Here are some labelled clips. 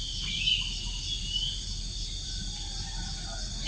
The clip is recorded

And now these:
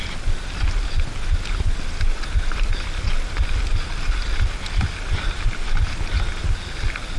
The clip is recorded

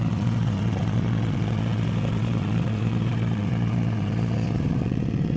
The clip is remade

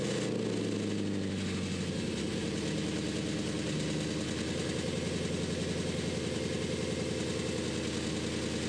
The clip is recorded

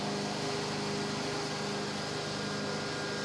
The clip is recorded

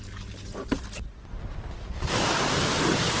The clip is recorded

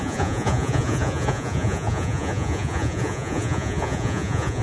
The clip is remade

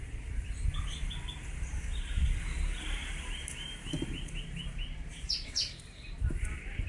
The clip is recorded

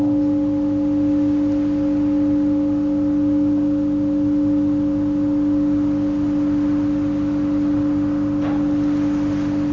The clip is recorded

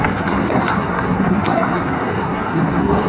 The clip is remade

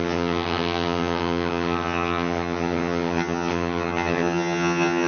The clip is remade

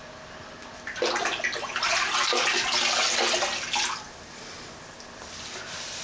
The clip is recorded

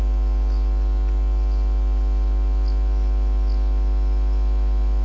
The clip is recorded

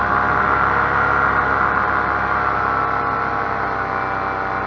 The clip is recorded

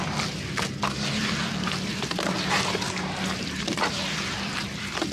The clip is recorded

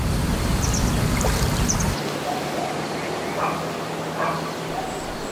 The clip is recorded